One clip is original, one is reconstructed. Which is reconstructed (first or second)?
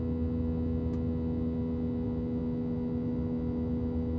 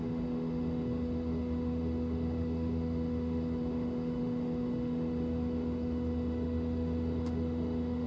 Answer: second